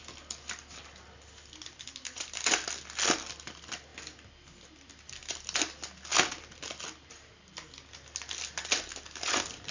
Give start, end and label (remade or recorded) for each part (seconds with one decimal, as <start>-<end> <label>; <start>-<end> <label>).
0.0-9.7 recorded